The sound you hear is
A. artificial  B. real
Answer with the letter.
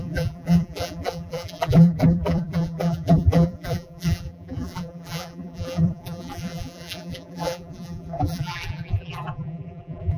A